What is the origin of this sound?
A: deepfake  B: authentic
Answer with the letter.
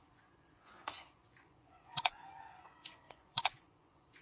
A